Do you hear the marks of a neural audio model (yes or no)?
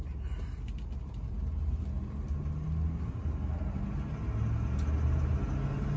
no